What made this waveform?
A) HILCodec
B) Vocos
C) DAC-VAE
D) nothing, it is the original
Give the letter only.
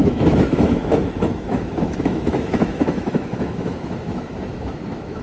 C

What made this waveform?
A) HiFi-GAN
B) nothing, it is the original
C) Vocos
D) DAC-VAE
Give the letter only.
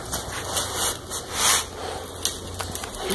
B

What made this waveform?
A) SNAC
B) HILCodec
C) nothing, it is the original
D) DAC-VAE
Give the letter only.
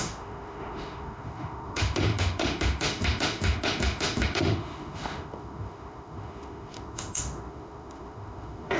D